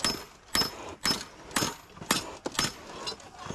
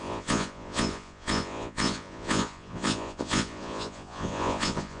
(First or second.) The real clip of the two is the first